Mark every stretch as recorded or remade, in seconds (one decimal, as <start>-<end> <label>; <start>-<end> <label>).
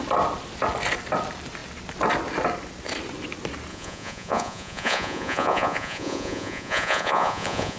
0.0-3.7 recorded; 3.7-7.8 remade